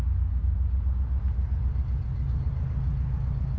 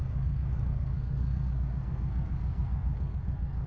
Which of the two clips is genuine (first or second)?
first